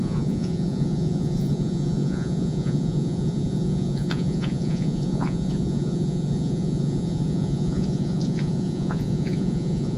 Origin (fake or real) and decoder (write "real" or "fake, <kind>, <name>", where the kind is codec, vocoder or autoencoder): fake, vocoder, Vocos